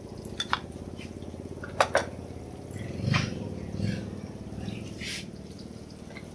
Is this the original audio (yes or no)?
yes